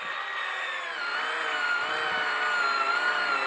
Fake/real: real